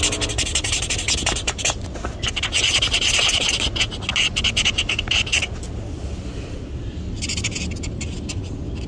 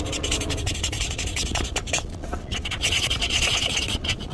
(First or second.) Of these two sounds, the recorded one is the first